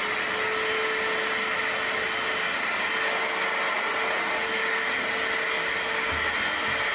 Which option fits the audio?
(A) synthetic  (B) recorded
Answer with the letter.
B